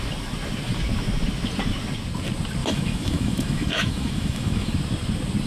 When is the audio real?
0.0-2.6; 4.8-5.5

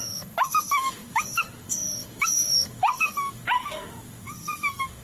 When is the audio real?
none

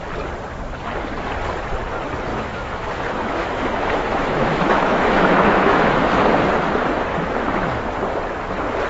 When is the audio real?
0.0-2.3; 6.1-7.1; 7.8-8.9